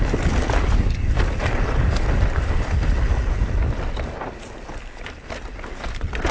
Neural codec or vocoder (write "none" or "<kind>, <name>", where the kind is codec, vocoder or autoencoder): none